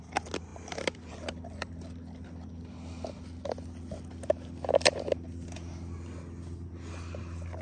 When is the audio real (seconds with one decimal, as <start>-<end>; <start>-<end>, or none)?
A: 0.0-7.6